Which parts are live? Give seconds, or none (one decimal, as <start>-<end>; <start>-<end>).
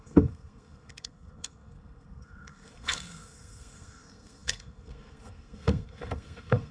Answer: none